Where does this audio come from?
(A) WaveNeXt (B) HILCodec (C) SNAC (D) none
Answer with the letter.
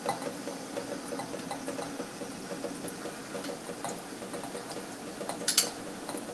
D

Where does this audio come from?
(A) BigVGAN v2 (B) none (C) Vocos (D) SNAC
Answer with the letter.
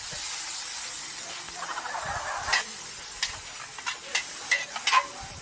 B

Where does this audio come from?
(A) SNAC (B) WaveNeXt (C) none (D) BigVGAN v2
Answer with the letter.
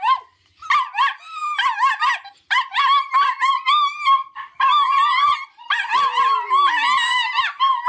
D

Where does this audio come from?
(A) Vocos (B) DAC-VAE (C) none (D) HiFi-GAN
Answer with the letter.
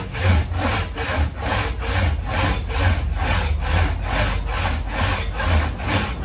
C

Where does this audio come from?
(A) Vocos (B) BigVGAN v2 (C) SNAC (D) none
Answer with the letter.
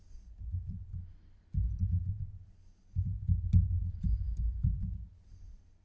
D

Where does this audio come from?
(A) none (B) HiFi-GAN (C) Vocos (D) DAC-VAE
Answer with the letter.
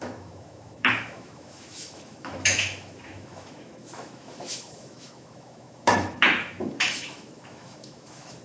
D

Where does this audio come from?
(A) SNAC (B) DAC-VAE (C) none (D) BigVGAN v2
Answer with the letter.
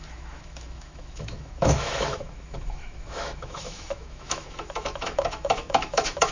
B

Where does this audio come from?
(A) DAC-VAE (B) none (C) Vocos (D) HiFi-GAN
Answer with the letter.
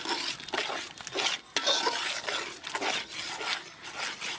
B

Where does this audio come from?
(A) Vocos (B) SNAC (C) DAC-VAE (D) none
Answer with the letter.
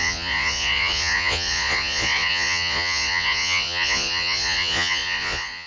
A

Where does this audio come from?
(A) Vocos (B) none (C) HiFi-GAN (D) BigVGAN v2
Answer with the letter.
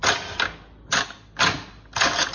B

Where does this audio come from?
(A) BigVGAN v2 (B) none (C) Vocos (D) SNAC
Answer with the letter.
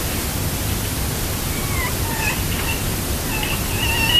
B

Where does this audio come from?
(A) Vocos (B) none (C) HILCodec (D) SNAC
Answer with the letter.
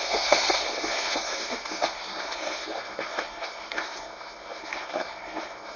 D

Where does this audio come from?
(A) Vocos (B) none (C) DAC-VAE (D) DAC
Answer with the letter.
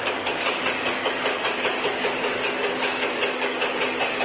D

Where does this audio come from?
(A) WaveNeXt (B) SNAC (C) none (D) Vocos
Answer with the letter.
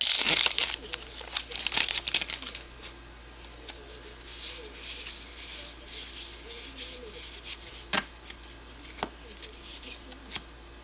C